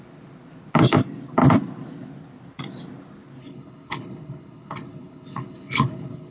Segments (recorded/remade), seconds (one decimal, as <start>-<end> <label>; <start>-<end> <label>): 0.0-3.4 recorded; 3.4-6.3 remade